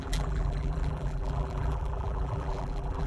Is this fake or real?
fake